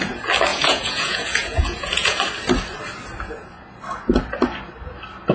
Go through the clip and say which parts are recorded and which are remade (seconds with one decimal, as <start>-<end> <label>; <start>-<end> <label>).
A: 0.0-0.5 recorded; 0.5-2.2 remade; 2.2-5.3 recorded